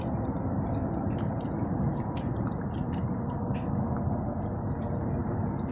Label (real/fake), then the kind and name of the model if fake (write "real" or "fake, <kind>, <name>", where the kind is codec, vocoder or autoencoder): fake, vocoder, BigVGAN v2